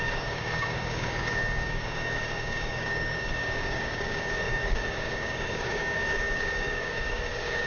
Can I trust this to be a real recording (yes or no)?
no